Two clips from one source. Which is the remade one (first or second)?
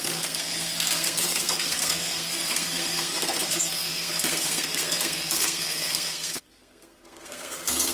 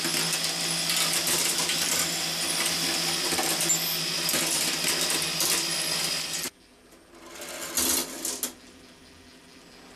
first